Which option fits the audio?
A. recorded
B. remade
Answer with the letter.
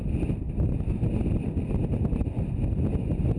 A